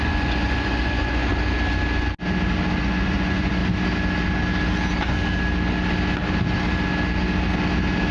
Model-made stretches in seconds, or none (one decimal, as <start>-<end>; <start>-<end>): 0.0-1.3; 2.8-3.6